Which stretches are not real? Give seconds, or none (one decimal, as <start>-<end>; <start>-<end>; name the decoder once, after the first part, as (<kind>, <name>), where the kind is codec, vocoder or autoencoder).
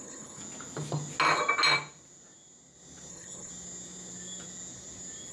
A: 0.0-0.4 (codec, HILCodec); 3.1-3.5